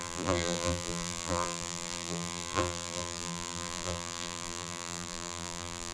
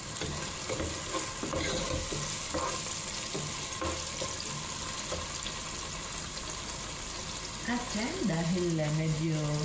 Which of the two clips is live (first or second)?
second